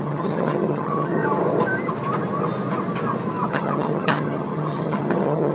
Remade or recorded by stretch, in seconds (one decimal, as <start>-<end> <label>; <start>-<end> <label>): 0.0-1.2 remade; 1.2-3.5 recorded; 3.5-5.5 remade